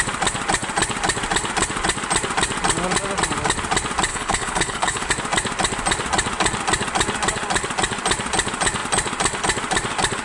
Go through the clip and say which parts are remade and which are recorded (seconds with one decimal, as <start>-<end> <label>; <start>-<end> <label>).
0.0-4.1 recorded; 4.1-5.1 remade; 5.1-10.2 recorded